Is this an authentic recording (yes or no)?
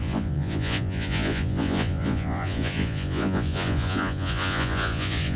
no